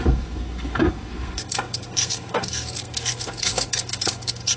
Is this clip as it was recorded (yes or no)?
no